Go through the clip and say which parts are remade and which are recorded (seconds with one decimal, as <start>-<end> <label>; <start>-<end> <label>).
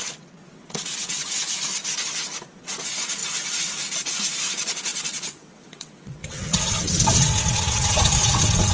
0.0-1.8 remade; 1.8-2.5 recorded; 2.5-3.2 remade; 3.2-4.5 recorded; 4.5-8.7 remade